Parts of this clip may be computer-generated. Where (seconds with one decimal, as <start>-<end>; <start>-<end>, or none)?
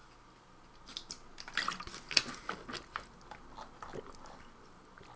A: none